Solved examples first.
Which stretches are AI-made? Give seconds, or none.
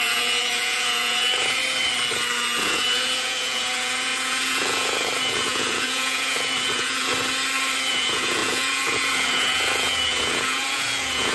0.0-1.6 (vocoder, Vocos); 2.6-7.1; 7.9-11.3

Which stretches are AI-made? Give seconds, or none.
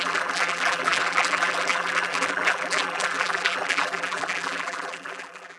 0.0-5.6 (vocoder, BigVGAN v2)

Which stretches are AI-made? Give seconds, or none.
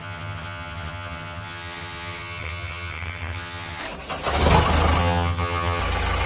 0.0-3.8 (vocoder, HiFi-GAN); 5.0-5.8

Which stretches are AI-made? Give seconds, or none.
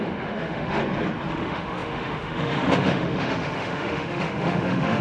0.0-0.8 (autoencoder, DAC-VAE); 1.3-5.0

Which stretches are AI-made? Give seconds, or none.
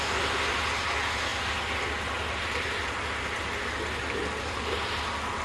1.3-4.5 (vocoder, BigVGAN v2)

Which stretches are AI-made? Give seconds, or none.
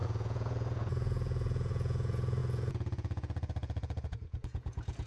0.0-5.1 (vocoder, Vocos)